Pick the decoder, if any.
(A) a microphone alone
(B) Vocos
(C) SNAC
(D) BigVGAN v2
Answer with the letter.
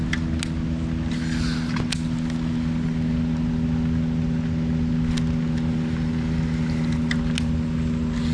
A